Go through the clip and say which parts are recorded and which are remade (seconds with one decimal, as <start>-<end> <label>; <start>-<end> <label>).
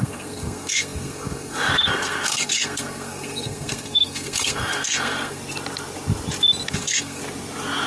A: 0.0-5.4 remade; 5.4-6.7 recorded; 6.7-7.2 remade; 7.2-7.9 recorded